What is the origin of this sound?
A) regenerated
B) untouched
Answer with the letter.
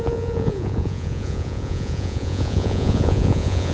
A